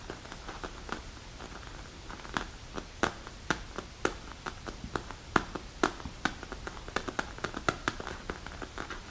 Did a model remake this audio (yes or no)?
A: no